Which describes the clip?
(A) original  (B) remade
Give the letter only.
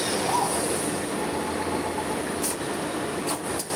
A